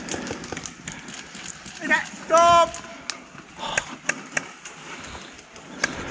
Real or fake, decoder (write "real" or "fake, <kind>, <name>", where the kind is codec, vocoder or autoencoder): real